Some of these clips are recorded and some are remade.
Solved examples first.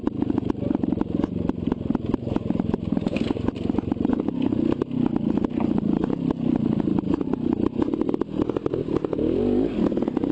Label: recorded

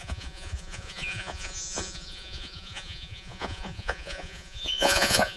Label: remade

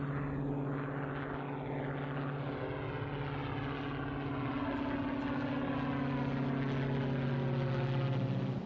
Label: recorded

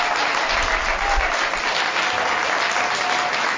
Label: recorded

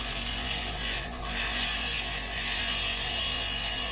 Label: remade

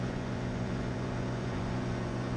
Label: remade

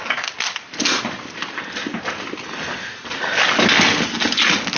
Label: recorded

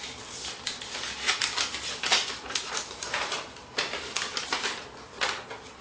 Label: recorded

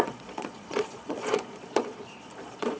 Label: remade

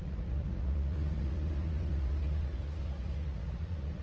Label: remade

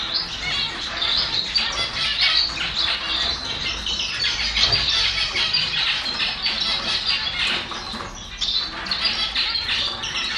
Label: recorded